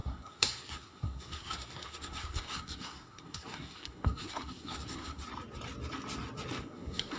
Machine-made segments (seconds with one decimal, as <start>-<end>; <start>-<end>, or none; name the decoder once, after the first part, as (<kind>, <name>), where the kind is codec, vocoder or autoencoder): 0.0-5.2 (codec, SNAC); 6.6-7.2